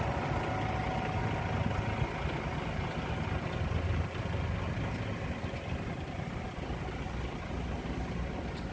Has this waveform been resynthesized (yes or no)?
no